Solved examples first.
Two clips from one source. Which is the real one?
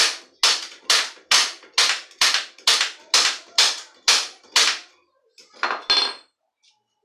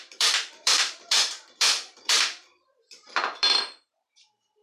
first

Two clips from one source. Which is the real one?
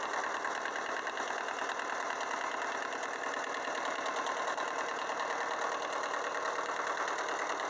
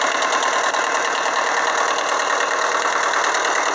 second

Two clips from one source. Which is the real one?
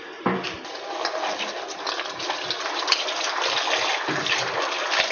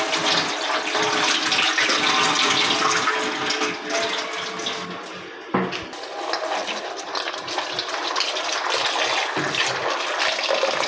second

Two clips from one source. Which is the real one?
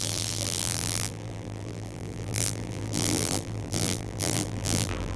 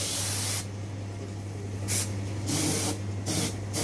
second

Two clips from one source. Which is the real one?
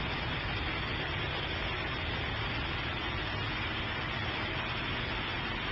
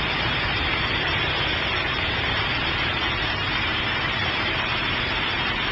first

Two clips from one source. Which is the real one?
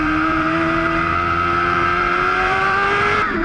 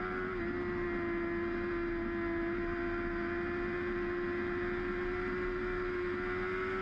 second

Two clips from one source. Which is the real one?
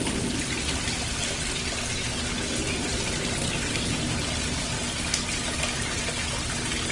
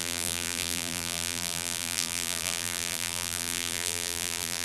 first